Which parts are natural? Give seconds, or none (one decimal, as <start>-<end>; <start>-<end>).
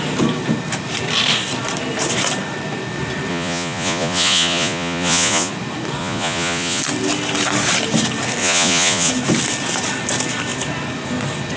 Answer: 0.0-3.3; 5.5-6.0; 6.8-8.4; 9.1-11.6